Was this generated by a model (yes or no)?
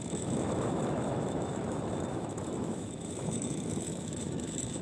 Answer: yes